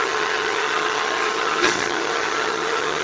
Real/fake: fake